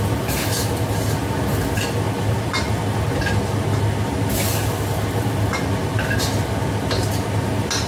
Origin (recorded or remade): recorded